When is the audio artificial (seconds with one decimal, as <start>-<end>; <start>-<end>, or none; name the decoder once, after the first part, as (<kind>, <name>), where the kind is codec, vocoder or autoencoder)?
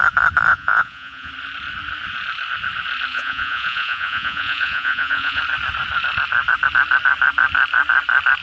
0.5-1.3 (vocoder, Vocos); 3.1-5.4